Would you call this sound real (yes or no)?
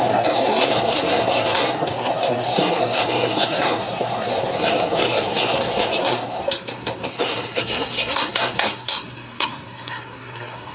no